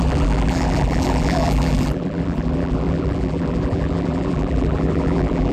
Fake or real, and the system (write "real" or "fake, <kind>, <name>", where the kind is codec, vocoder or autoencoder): fake, vocoder, BigVGAN v2